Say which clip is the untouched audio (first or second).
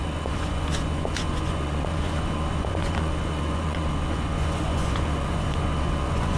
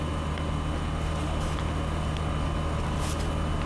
second